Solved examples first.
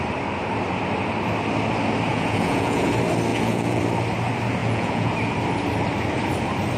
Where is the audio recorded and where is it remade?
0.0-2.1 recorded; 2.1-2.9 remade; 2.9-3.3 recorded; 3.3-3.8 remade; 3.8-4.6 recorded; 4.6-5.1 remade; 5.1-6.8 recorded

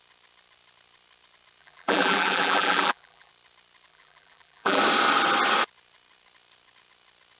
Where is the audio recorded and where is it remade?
0.0-1.6 recorded; 1.6-3.3 remade; 3.3-3.9 recorded; 3.9-4.8 remade; 4.8-7.4 recorded

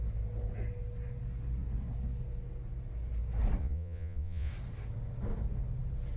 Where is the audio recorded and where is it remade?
0.0-3.6 recorded; 3.6-4.5 remade; 4.5-6.2 recorded

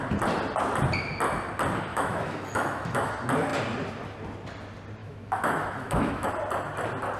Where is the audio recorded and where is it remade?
0.0-1.9 recorded; 1.9-3.1 remade; 3.1-5.0 recorded; 5.0-6.3 remade; 6.3-7.2 recorded

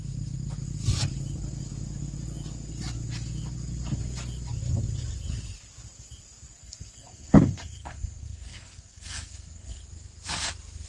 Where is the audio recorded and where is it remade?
0.0-6.6 recorded; 6.6-9.8 remade; 9.8-10.9 recorded

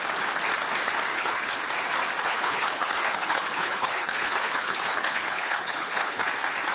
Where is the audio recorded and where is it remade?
0.0-1.1 recorded; 1.1-1.6 remade; 1.6-2.3 recorded; 2.3-6.3 remade; 6.3-6.7 recorded

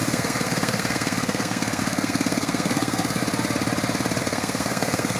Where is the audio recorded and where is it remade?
0.0-3.2 remade; 3.2-4.2 recorded; 4.2-5.2 remade

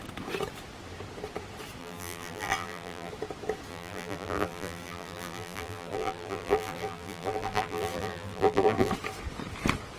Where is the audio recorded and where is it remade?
0.0-1.8 recorded; 1.8-3.1 remade; 3.1-3.7 recorded; 3.7-8.9 remade; 8.9-10.0 recorded